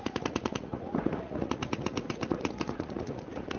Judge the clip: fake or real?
fake